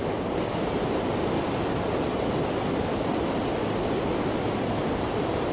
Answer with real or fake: real